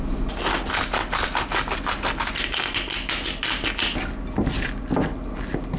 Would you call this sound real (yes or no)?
yes